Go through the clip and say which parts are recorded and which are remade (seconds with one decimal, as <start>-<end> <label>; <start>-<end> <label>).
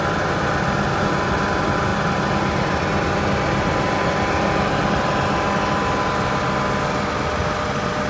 0.0-1.9 recorded; 1.9-2.8 remade; 2.8-8.1 recorded